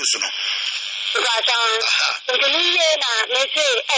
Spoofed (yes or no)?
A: no